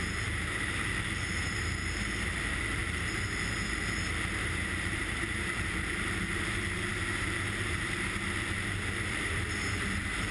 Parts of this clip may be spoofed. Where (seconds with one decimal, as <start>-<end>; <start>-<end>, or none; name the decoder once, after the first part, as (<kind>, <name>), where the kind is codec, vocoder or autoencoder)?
0.0-2.8 (vocoder, BigVGAN v2); 4.0-10.3